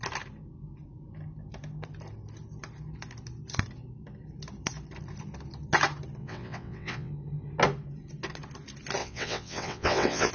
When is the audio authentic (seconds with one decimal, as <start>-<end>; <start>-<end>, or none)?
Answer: 0.0-6.2; 7.1-9.0